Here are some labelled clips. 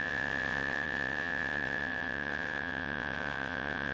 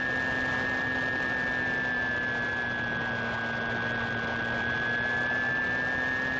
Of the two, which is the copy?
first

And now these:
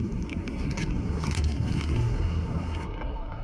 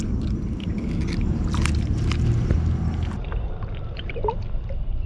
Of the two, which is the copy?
first